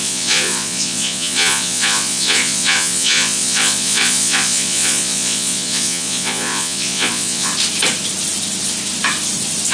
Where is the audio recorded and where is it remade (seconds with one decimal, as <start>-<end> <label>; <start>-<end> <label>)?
0.0-7.5 remade; 7.5-9.7 recorded